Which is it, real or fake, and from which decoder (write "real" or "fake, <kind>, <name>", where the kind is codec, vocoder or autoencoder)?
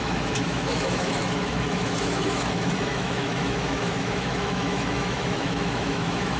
fake, autoencoder, DAC-VAE